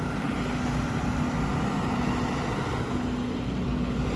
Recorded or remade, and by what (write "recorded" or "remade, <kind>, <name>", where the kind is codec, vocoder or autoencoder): recorded